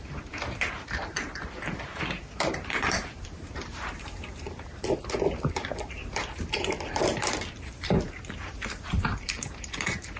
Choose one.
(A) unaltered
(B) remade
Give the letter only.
B